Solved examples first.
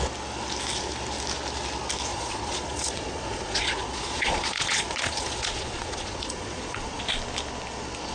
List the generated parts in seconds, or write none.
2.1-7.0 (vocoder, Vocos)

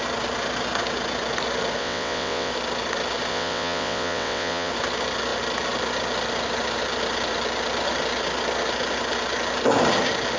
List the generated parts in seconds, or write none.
1.8-2.5 (vocoder, WaveNeXt); 3.3-4.7

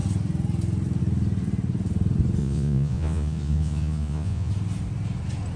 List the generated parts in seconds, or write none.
2.4-4.5 (vocoder, Vocos)

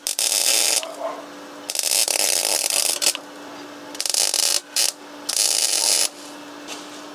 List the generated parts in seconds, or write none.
none